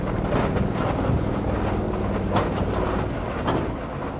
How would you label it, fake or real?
real